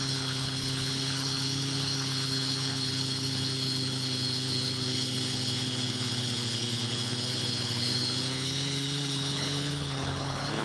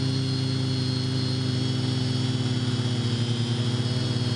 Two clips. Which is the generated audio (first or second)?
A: first